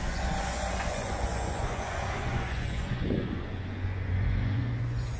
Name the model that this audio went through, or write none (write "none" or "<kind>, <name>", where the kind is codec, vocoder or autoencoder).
vocoder, Vocos